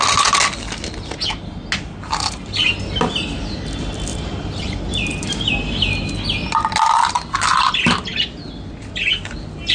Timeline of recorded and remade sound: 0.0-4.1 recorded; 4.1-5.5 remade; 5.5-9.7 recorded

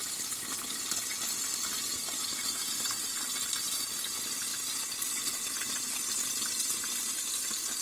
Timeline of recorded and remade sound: 0.0-7.8 recorded

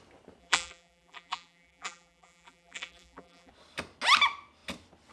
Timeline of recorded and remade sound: 0.0-0.4 recorded; 0.4-3.5 remade; 3.5-5.1 recorded